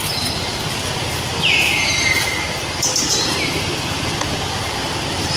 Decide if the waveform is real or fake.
real